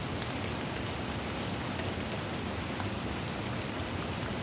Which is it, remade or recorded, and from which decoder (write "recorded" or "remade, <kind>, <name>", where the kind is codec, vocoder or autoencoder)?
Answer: recorded